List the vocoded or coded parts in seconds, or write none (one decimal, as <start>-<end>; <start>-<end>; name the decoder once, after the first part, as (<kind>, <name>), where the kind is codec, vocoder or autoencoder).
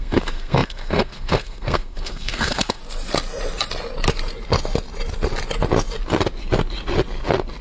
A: 0.0-2.8 (codec, SNAC)